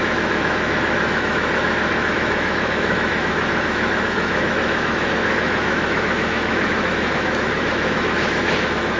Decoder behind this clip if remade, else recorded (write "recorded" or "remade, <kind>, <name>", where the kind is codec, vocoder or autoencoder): remade, autoencoder, DAC-VAE